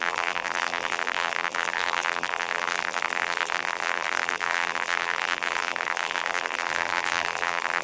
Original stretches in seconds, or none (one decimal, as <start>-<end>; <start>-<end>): none